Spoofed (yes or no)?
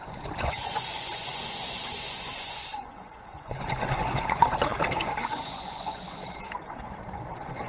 yes